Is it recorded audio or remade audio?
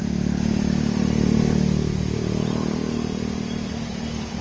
remade